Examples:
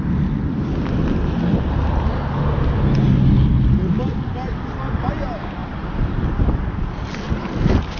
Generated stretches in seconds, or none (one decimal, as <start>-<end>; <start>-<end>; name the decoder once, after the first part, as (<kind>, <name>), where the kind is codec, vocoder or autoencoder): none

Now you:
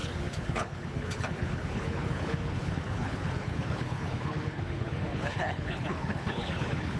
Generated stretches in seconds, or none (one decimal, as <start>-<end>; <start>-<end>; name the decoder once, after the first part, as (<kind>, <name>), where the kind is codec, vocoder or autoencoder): 0.0-7.0 (codec, HILCodec)

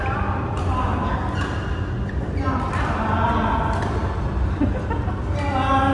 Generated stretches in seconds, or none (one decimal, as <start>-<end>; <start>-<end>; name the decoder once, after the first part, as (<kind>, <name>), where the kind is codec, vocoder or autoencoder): none

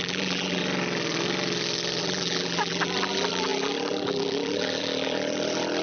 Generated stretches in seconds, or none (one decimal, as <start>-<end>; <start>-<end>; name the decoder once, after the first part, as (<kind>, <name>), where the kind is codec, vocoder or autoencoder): 0.0-0.6 (vocoder, BigVGAN v2); 2.0-5.8